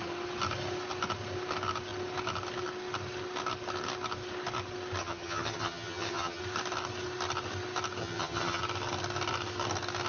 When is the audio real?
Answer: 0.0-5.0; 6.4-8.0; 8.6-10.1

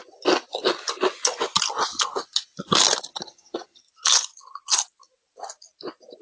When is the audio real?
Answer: 0.0-3.1; 3.8-6.2

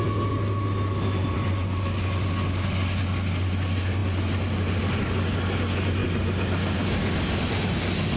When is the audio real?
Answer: 0.0-8.2

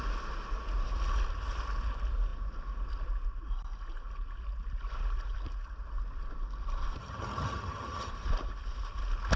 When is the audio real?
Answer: 0.0-7.0; 8.1-9.4

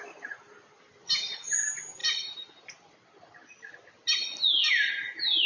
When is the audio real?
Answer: 0.0-5.5

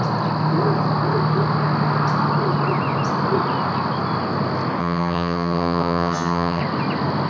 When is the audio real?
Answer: 0.0-4.8; 6.6-7.3

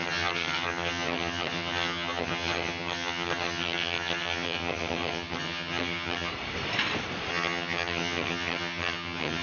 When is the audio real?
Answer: 6.3-7.3